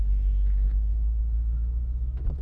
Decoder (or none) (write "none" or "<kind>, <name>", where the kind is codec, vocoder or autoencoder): none